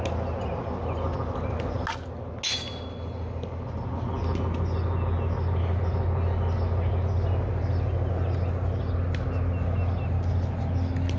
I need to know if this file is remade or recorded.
recorded